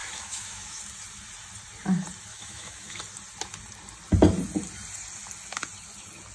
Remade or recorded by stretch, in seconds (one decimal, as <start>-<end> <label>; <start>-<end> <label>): 0.0-0.8 remade; 0.8-2.3 recorded; 2.3-3.0 remade; 3.0-6.3 recorded